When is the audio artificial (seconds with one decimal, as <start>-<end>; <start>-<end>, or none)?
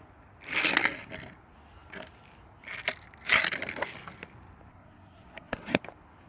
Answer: 4.7-5.8